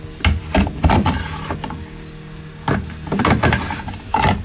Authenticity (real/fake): real